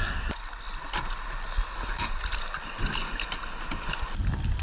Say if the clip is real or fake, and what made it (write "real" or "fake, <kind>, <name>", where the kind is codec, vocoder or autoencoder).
real